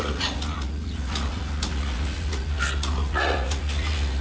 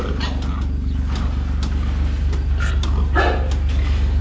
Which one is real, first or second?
second